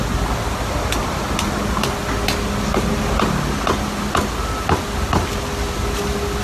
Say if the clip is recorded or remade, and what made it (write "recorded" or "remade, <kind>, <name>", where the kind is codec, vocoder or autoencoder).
recorded